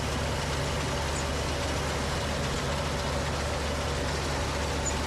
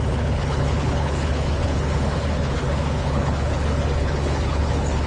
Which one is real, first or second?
first